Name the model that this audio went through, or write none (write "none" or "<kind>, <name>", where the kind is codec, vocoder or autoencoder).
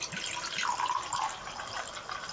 none